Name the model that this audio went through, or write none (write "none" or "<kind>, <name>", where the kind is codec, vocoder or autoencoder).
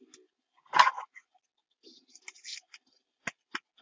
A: none